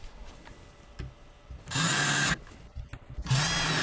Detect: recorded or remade recorded